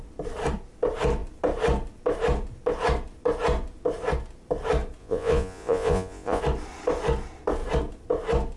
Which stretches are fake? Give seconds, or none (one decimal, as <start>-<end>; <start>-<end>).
5.0-6.4